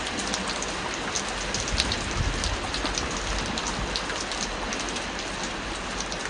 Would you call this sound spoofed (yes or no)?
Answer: no